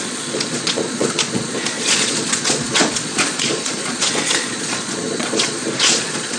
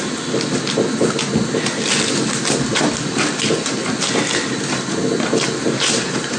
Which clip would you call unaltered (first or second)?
second